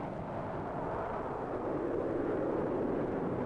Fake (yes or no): no